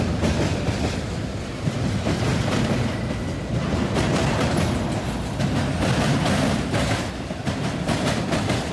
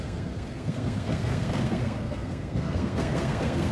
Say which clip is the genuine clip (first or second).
first